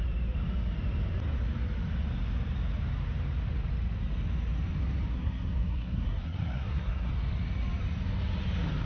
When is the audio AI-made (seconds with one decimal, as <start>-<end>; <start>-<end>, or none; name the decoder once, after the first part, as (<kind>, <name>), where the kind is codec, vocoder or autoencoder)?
5.1-7.1 (codec, SNAC)